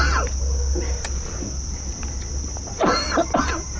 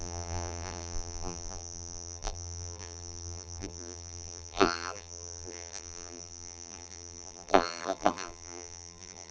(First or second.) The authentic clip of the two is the first